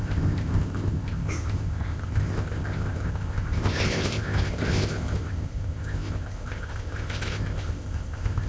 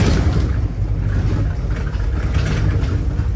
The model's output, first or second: first